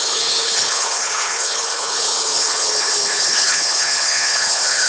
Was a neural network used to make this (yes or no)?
yes